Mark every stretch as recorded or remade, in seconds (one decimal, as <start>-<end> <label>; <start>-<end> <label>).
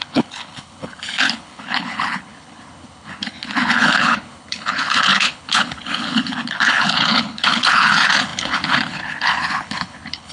0.0-10.3 remade